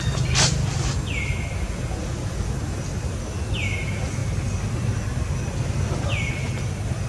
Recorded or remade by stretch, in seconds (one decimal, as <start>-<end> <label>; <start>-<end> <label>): 0.0-7.1 recorded